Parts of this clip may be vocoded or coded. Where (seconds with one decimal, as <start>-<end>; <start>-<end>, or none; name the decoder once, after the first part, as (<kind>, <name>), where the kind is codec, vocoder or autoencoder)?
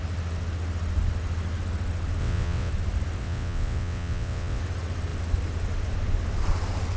2.2-2.7 (vocoder, WaveNeXt); 3.2-4.6